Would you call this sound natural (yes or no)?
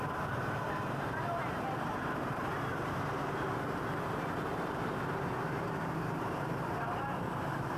no